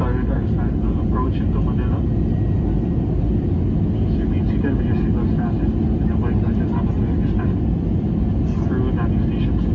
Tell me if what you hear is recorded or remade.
recorded